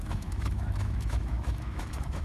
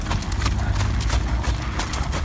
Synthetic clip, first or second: first